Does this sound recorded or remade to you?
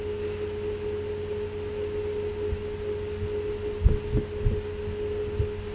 recorded